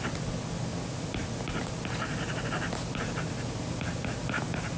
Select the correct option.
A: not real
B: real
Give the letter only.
B